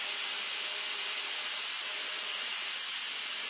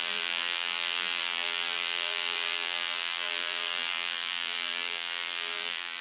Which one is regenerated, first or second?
second